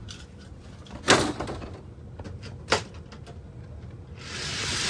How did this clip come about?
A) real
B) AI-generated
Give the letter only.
A